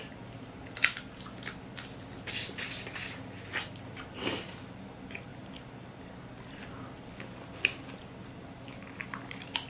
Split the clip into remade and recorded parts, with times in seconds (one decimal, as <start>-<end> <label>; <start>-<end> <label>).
0.0-9.7 recorded